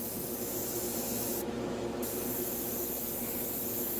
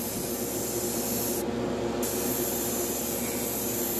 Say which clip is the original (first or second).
second